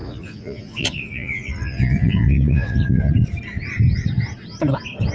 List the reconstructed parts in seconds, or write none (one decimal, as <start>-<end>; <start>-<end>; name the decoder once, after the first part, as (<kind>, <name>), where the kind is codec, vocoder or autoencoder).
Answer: 0.0-3.1 (vocoder, Vocos)